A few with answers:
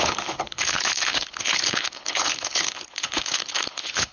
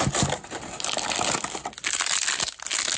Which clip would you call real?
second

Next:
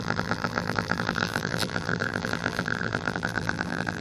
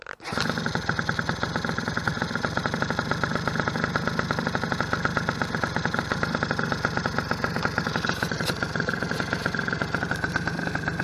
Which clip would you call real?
second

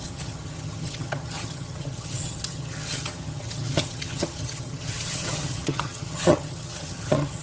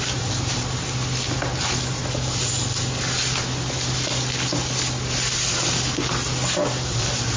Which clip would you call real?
second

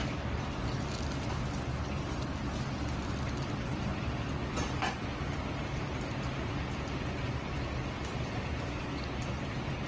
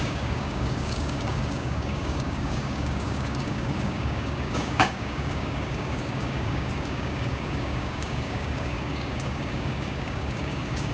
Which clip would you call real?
first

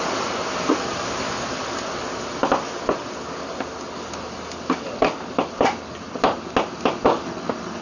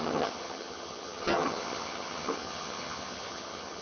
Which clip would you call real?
first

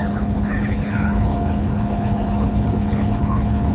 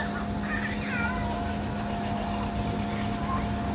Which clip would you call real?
second